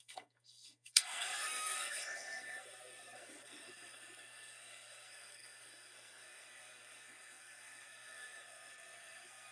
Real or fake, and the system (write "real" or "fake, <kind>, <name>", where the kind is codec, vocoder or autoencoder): fake, codec, SNAC